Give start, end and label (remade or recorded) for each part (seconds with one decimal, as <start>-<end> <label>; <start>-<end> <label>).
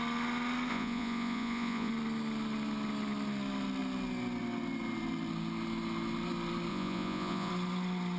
0.0-0.7 recorded; 0.7-1.9 remade; 1.9-6.7 recorded; 6.7-7.5 remade; 7.5-8.2 recorded